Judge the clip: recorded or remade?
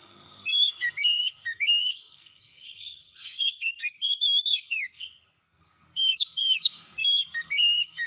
remade